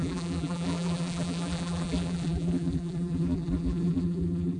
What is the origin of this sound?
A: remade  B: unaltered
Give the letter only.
A